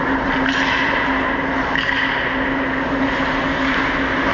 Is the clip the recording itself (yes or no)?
yes